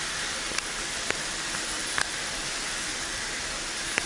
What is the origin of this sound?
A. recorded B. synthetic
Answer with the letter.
B